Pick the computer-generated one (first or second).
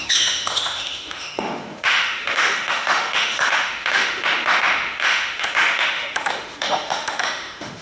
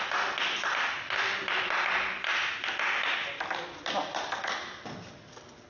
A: first